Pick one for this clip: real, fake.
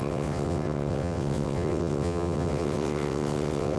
fake